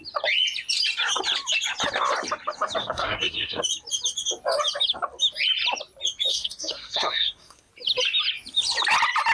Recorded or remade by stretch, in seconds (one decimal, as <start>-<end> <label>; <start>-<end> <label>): 0.0-2.8 recorded; 2.8-3.6 remade; 3.6-6.3 recorded; 6.3-7.7 remade; 7.7-9.3 recorded